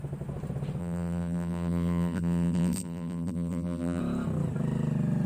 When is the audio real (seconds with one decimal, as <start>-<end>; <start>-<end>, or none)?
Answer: 0.0-0.8; 4.0-5.3